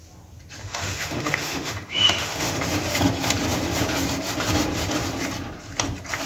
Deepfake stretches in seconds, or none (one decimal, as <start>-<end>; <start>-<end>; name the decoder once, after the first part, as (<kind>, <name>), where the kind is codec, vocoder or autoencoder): 0.6-2.6 (autoencoder, DAC-VAE)